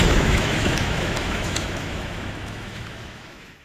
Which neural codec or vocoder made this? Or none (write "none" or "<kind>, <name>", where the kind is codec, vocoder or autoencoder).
autoencoder, DAC-VAE